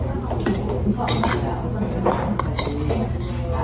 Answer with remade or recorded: recorded